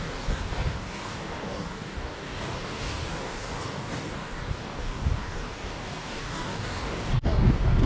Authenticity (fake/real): fake